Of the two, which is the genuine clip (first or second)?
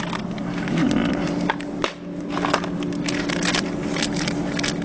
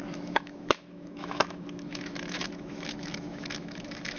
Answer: first